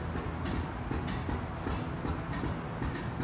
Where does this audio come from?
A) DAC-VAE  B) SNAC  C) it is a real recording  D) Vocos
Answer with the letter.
C